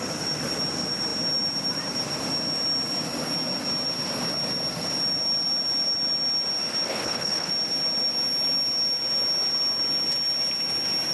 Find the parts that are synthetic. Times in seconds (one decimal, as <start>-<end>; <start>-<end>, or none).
6.9-7.5

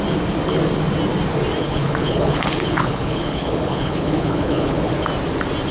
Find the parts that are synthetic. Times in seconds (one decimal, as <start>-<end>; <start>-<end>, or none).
1.6-4.9

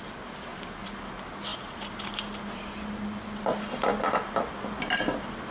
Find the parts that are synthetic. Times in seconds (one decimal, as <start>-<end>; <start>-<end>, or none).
none

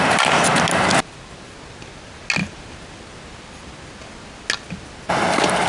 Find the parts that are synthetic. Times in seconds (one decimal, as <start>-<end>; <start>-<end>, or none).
none

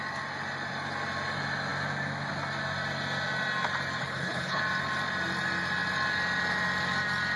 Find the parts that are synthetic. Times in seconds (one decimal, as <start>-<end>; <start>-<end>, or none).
4.0-4.6

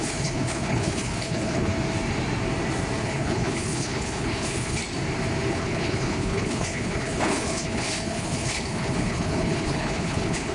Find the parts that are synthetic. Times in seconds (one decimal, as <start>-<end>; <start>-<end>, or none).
0.0-1.7; 3.0-4.8; 5.5-10.5

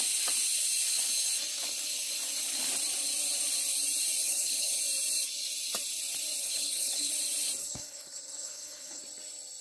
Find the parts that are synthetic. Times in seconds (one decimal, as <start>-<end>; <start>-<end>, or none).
4.2-4.8; 6.4-7.1; 7.6-9.0

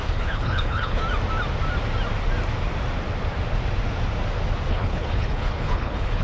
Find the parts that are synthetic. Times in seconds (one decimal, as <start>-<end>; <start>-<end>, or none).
0.0-1.0; 4.7-6.2